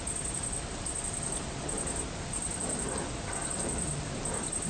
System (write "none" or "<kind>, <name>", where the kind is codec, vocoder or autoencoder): none